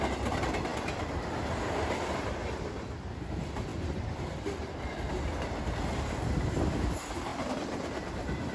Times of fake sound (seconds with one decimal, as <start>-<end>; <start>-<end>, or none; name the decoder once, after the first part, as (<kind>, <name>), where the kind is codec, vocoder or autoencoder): 0.7-1.3 (vocoder, BigVGAN v2); 3.7-4.9